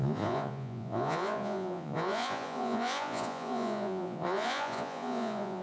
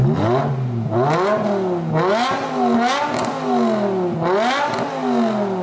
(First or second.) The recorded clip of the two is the second